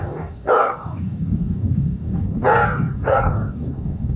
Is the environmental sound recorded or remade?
remade